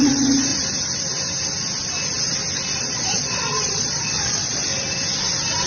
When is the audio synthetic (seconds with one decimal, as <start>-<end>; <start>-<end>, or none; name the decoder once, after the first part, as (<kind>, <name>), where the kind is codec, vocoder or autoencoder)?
0.0-0.5 (vocoder, Vocos); 2.8-4.7